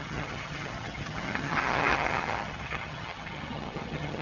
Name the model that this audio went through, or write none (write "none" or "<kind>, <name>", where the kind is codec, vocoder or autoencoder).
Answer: vocoder, HiFi-GAN